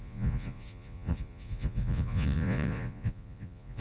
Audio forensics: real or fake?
fake